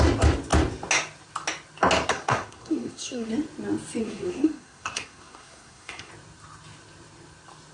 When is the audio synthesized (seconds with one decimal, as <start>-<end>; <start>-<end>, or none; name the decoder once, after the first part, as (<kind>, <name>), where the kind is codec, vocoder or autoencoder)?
2.1-3.3 (codec, SNAC); 4.0-6.1

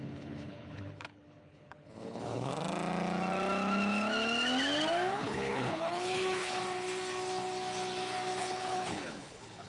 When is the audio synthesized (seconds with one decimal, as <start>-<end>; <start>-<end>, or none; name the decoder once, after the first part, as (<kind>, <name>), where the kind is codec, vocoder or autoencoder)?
0.0-2.5 (codec, HILCodec); 5.1-6.6; 8.4-9.7

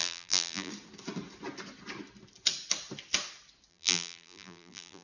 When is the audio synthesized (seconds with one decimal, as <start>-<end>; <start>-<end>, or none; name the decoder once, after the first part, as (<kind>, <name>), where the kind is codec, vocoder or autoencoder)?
0.0-0.7 (vocoder, BigVGAN v2); 3.7-5.0

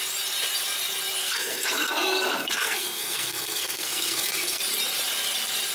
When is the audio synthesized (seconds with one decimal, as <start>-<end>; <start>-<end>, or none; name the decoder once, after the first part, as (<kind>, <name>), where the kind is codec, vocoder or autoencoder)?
1.2-4.6 (codec, SNAC)

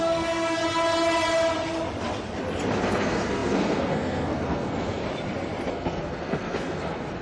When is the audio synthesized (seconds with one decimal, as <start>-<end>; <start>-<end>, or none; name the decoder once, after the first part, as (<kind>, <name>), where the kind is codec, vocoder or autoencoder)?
0.0-0.6 (codec, SNAC); 2.8-5.0; 5.7-7.2

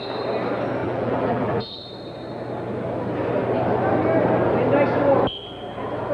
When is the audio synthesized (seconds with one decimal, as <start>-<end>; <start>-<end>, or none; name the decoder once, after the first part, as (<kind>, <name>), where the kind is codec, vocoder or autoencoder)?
0.8-1.8 (vocoder, BigVGAN v2)